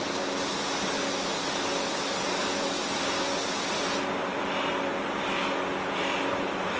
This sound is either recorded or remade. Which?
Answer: recorded